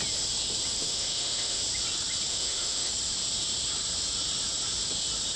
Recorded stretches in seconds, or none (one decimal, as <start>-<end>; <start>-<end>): 0.0-0.8; 1.6-2.3; 2.9-5.4